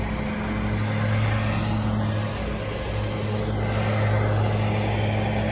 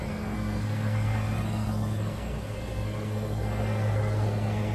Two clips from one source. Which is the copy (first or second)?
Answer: second